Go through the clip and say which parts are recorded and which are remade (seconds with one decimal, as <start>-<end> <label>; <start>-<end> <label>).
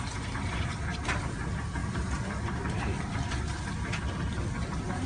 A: 0.0-1.8 recorded; 1.8-3.1 remade; 3.1-5.1 recorded